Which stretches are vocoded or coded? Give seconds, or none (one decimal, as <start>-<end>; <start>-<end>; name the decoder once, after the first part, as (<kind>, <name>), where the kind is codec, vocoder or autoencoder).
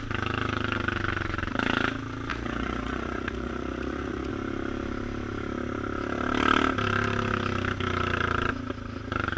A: 2.3-4.3 (vocoder, Vocos)